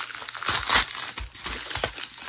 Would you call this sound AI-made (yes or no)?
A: no